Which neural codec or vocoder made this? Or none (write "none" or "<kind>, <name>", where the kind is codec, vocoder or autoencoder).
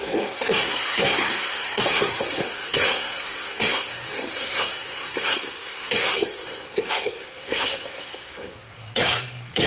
codec, SNAC